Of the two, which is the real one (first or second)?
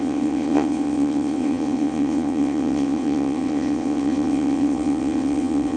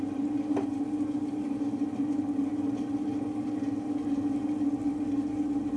second